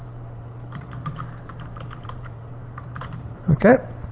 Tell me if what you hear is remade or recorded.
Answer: remade